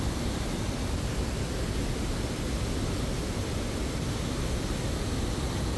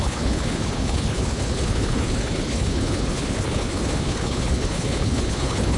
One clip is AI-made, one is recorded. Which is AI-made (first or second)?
second